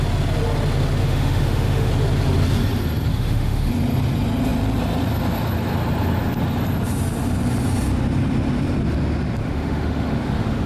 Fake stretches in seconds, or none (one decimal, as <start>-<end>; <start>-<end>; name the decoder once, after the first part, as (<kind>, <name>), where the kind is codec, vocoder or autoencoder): 1.0-1.9 (autoencoder, DAC-VAE); 3.1-3.7; 9.4-10.7